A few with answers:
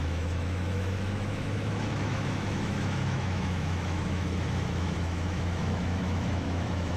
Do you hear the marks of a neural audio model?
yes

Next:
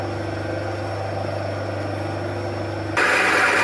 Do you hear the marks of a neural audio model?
no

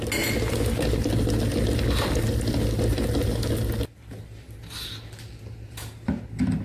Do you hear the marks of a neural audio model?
no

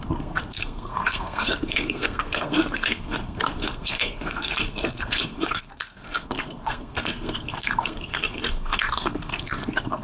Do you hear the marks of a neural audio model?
yes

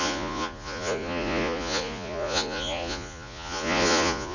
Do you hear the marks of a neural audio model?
yes